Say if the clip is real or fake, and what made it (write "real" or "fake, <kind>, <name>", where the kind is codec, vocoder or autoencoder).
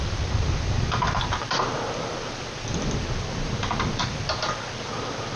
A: real